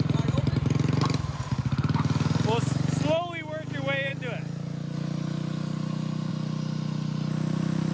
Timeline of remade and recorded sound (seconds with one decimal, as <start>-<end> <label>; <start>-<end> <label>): 0.0-7.9 recorded